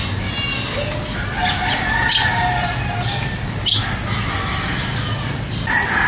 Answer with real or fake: real